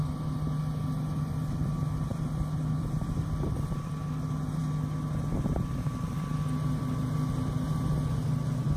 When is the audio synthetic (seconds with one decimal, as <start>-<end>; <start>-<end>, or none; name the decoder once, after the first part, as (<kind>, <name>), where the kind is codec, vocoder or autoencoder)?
2.1-3.7 (vocoder, BigVGAN v2)